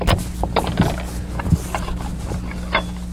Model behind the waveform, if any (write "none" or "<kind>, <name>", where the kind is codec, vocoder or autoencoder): none